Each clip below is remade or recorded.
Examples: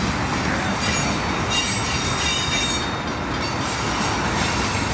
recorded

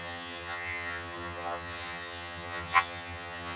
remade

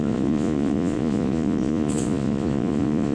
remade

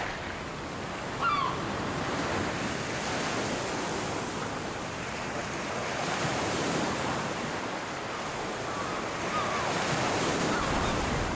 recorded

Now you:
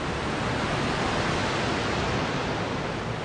recorded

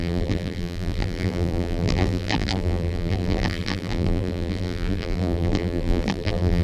remade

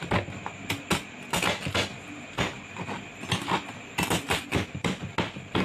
recorded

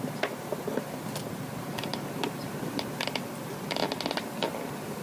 recorded